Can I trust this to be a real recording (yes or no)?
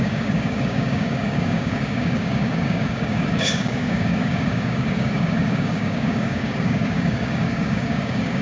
no